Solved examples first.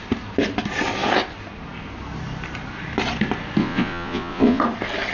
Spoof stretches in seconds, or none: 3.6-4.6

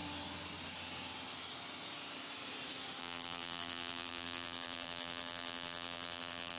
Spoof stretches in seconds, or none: 3.0-6.6

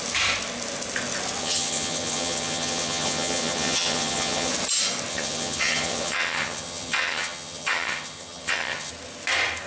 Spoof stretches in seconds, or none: 1.4-4.5; 5.1-8.9

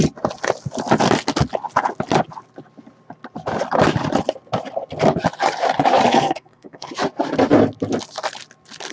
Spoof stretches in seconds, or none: 6.1-6.9

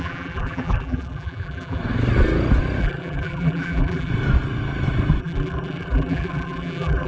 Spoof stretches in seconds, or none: 0.0-1.8; 2.8-4.1; 5.2-7.1